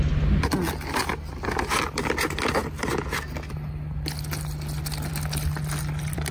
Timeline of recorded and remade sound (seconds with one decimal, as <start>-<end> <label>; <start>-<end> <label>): 0.0-6.3 recorded